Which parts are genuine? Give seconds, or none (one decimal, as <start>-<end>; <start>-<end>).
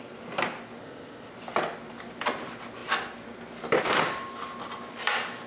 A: 0.0-0.8; 1.3-5.5